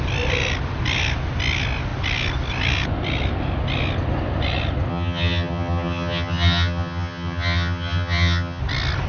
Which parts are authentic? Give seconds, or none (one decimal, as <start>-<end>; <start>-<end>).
0.0-4.9; 8.6-9.1